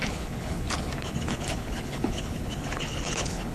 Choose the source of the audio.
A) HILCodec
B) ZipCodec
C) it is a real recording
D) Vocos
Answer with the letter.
A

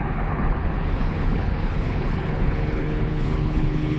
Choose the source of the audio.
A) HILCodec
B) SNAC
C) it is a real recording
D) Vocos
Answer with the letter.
A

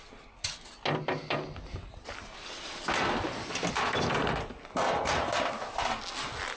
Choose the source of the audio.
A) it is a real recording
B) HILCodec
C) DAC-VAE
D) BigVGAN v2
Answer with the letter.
A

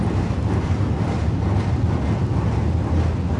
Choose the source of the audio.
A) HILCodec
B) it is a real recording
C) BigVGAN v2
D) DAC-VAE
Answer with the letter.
B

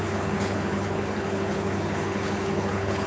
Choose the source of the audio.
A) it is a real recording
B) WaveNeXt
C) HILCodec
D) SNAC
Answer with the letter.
C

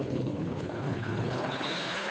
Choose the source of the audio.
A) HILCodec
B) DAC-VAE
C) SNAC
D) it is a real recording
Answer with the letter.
A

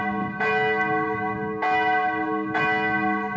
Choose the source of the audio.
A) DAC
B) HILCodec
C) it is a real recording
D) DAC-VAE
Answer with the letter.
C